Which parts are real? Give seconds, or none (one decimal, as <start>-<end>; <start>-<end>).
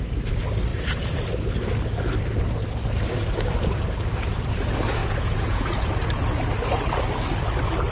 0.0-5.0; 5.8-7.9